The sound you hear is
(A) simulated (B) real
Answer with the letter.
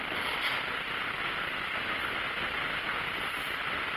B